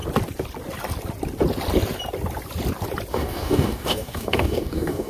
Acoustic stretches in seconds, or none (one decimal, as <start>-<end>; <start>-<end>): 0.0-3.1